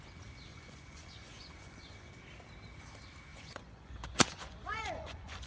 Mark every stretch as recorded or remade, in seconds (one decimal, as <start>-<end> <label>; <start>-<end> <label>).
0.0-0.5 recorded; 0.5-2.1 remade; 2.1-3.3 recorded; 3.3-5.5 remade